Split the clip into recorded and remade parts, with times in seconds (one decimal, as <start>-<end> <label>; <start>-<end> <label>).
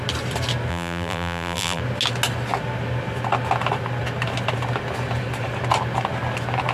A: 0.0-0.7 recorded; 0.7-1.8 remade; 1.8-6.7 recorded